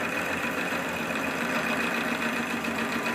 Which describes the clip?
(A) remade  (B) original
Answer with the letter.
A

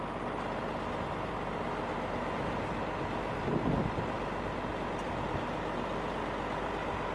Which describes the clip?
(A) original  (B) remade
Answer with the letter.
A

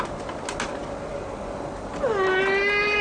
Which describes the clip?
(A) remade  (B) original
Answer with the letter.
B